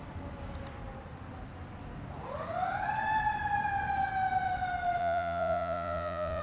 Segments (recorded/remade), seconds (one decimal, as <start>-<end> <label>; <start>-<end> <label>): 0.0-5.0 recorded; 5.0-6.4 remade